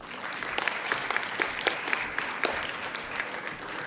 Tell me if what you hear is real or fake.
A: real